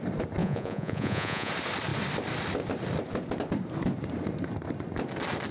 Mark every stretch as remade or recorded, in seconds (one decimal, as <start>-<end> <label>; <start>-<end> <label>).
0.0-0.4 recorded; 0.4-1.5 remade; 1.5-5.5 recorded